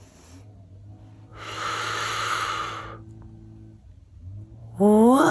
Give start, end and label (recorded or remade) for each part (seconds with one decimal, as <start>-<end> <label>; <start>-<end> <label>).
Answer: 0.0-1.3 recorded; 1.3-2.8 remade; 2.8-4.6 recorded; 4.6-5.3 remade